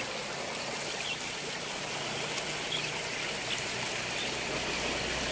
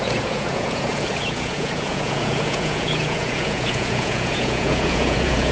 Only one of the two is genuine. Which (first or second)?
first